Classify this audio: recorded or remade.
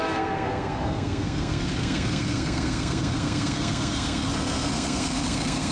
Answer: remade